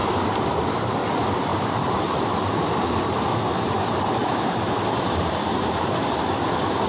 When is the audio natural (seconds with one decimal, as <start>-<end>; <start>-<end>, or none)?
0.7-1.5; 2.2-4.2; 5.3-6.9